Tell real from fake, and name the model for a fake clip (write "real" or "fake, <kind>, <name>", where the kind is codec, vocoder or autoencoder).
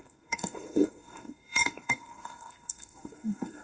fake, codec, SNAC